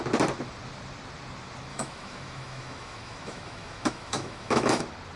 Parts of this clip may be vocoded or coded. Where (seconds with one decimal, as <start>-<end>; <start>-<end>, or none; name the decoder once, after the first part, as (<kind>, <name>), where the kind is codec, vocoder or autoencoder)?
1.7-4.8 (autoencoder, DAC-VAE)